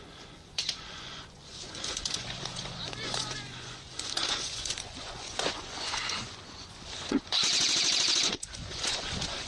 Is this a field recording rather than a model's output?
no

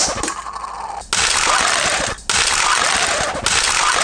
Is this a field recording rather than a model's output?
yes